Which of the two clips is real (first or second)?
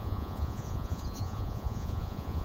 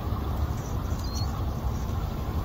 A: second